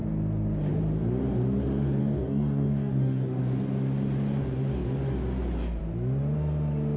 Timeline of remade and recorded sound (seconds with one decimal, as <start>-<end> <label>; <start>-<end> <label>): 0.0-2.0 recorded; 2.0-3.4 remade; 3.4-7.0 recorded